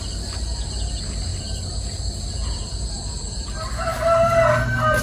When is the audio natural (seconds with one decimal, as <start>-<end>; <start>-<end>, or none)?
0.0-5.0